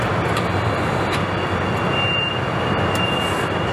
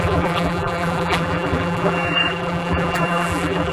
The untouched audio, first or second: first